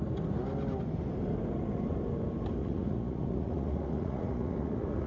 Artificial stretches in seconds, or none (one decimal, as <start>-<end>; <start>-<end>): 2.6-5.1

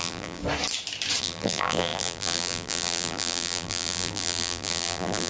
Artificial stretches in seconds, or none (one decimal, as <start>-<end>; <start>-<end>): 0.0-0.4; 1.2-5.3

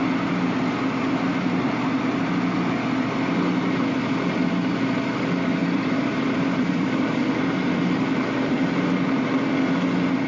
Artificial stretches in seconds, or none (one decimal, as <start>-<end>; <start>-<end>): 5.6-9.5

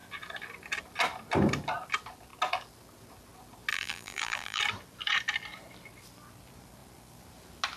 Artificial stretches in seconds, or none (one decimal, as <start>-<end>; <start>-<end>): 3.7-4.6

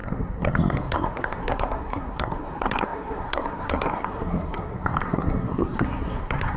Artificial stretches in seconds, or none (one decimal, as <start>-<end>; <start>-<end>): 0.0-6.6

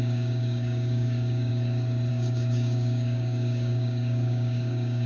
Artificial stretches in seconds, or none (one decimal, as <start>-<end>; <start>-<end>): 0.0-1.5; 2.1-5.1

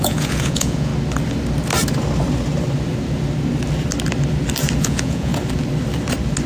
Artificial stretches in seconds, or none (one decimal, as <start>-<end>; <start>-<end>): 0.0-0.9; 4.8-5.3